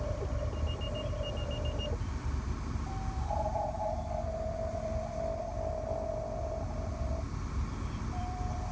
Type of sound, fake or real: fake